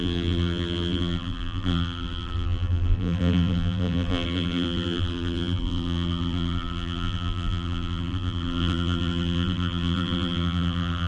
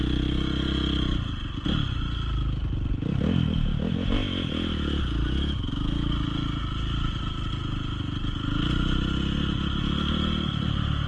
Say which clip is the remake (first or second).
first